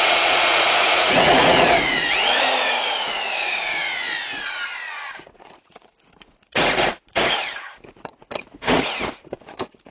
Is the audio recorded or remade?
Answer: remade